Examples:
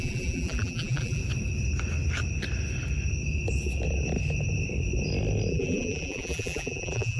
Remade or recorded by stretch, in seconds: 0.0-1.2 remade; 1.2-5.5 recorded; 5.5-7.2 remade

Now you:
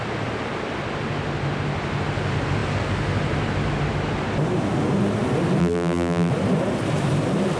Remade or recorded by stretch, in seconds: 0.0-5.6 recorded; 5.6-6.3 remade; 6.3-7.6 recorded

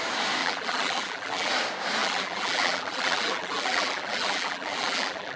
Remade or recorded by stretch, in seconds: 0.0-0.4 recorded; 0.4-1.5 remade; 1.5-2.0 recorded; 2.0-5.4 remade

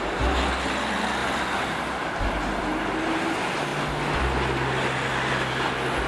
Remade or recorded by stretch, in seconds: 0.0-6.1 recorded

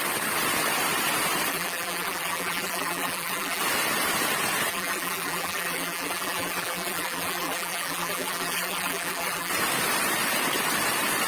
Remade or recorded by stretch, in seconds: 0.0-1.5 recorded; 1.5-3.6 remade; 3.6-4.7 recorded; 4.7-9.5 remade; 9.5-11.3 recorded